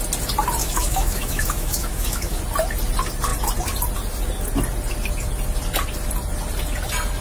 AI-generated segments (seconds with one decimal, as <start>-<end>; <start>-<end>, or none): 0.6-2.4